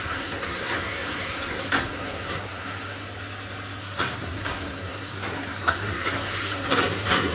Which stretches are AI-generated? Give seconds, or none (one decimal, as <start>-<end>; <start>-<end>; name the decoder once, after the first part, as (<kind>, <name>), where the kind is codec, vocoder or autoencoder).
0.0-3.0 (codec, SNAC); 3.8-7.3